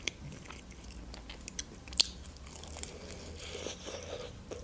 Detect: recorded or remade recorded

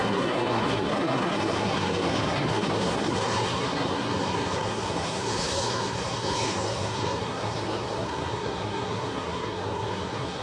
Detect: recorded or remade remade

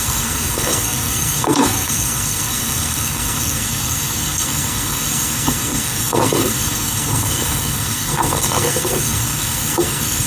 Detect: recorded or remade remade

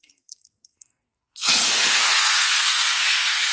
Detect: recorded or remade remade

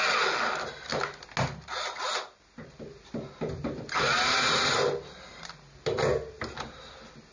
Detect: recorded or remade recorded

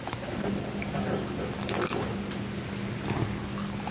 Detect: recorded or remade recorded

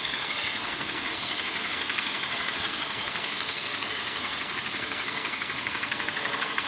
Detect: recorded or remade remade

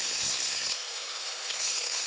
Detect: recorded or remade remade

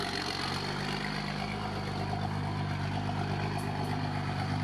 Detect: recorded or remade recorded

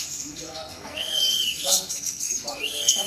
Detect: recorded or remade remade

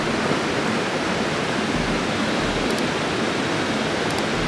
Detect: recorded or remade recorded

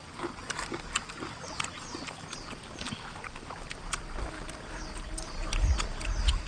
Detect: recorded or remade recorded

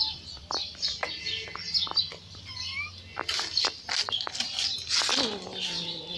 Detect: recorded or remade recorded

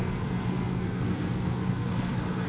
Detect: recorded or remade remade